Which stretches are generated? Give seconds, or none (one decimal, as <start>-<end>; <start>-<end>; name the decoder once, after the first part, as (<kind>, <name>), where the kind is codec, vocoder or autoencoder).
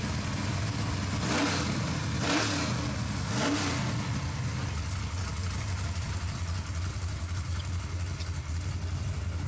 1.4-2.0 (vocoder, BigVGAN v2); 5.3-9.5